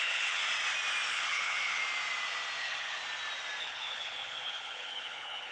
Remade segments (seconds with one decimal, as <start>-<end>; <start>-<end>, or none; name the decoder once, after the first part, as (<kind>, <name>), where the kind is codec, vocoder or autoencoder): 0.0-0.4 (codec, HILCodec); 1.1-1.8; 2.6-3.0; 3.6-5.5